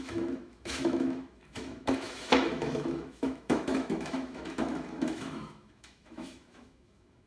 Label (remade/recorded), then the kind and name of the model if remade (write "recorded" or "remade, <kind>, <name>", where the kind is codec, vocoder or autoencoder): remade, autoencoder, DAC-VAE